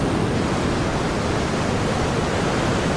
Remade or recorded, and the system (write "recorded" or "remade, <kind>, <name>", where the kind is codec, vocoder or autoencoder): recorded